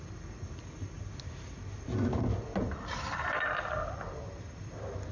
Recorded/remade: recorded